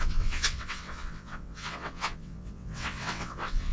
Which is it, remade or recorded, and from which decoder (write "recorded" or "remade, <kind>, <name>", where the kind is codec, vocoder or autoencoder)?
remade, vocoder, WaveNeXt